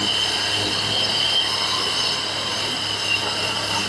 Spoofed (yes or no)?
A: no